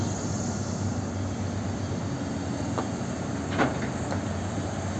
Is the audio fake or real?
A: real